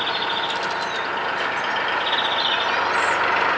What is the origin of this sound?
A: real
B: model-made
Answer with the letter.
A